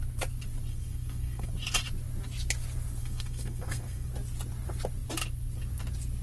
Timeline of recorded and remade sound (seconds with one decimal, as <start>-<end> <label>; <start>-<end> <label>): 0.0-0.7 recorded; 0.7-1.5 remade; 1.5-3.0 recorded; 3.0-4.1 remade; 4.1-6.2 recorded